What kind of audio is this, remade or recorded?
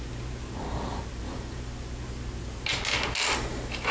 recorded